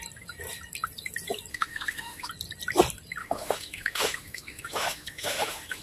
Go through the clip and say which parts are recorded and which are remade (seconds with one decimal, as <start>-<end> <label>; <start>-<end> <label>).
0.0-1.5 recorded; 1.5-2.3 remade; 2.3-3.2 recorded; 3.2-5.8 remade